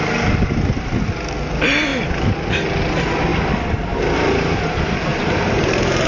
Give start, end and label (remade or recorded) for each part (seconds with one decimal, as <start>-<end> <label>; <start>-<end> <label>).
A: 0.0-5.1 recorded; 5.1-6.1 remade